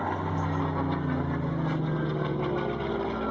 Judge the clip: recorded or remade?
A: recorded